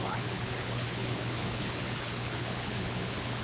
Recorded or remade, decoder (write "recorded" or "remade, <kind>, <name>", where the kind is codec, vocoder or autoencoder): remade, codec, HILCodec